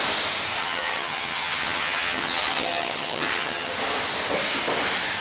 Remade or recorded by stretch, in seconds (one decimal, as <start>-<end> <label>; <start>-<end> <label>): 0.0-0.6 recorded; 0.6-3.7 remade; 3.7-5.2 recorded